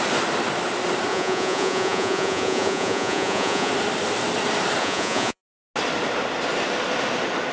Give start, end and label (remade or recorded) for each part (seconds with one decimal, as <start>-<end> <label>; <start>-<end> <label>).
0.0-1.1 recorded; 1.1-3.7 remade; 3.7-4.8 recorded; 4.8-5.4 remade; 5.4-7.5 recorded